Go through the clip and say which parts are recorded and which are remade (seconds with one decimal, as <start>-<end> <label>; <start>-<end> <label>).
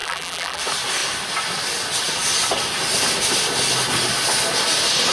0.0-0.6 remade; 0.6-5.1 recorded